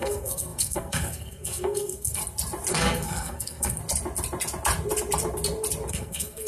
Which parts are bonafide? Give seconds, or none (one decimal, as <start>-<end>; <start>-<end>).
2.2-2.7; 3.8-5.9

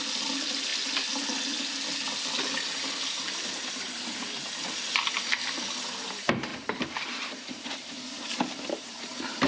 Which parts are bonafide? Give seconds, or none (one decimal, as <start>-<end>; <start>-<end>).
0.0-6.5; 8.0-9.5

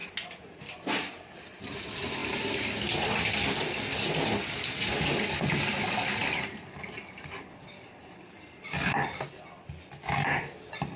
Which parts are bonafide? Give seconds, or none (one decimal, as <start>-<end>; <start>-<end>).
1.7-6.2; 10.5-11.0

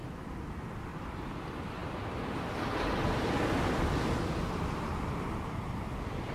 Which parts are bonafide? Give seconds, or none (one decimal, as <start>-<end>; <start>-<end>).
0.5-0.9; 1.4-6.3

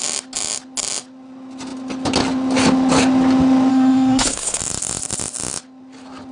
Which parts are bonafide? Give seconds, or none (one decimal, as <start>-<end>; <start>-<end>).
0.0-3.7; 4.6-6.3

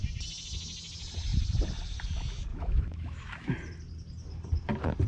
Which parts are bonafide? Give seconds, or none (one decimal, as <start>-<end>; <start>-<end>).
0.0-2.5; 3.5-5.1